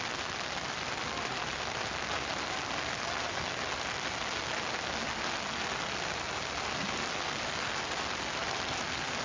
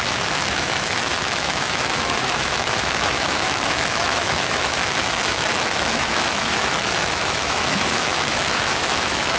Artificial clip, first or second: second